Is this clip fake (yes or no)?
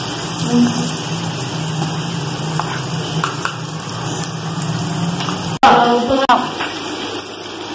no